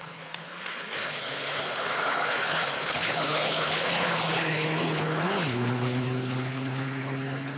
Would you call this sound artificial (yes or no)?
yes